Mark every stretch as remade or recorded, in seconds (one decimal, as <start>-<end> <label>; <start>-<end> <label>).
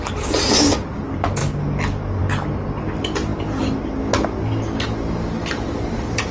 0.0-6.3 recorded